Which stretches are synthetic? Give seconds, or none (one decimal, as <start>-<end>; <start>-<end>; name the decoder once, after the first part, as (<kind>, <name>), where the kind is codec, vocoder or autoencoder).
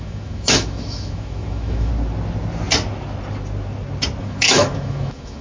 0.0-1.9 (autoencoder, DAC-VAE); 4.2-5.4